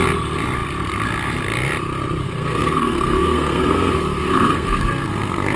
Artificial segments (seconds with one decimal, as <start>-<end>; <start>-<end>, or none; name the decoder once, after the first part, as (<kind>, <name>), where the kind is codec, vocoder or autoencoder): 2.2-5.6 (codec, SNAC)